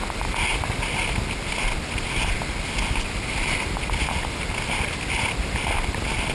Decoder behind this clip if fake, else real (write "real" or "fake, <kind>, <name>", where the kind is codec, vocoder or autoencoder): real